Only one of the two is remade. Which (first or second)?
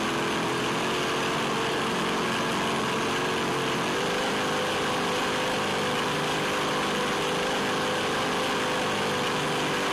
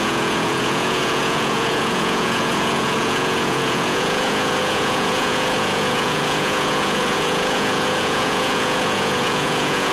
second